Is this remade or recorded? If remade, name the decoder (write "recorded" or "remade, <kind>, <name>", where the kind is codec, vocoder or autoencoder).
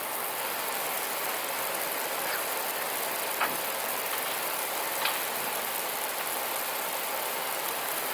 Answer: recorded